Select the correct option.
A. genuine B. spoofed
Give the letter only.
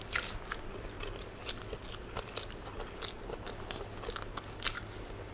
A